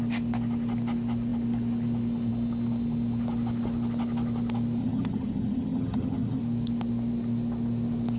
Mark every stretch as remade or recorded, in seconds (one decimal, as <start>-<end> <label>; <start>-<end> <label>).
0.0-4.8 recorded; 4.8-6.4 remade; 6.4-8.2 recorded